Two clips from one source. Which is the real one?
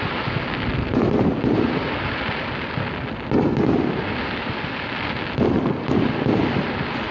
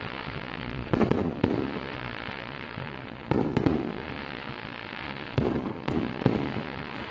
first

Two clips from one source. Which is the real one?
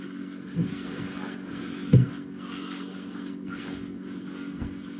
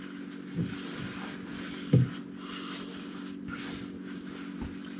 second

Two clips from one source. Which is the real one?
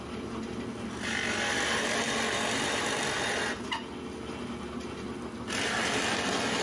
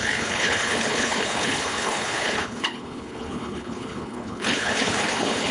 first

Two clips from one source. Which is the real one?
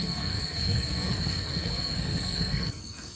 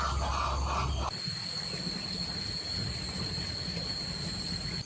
second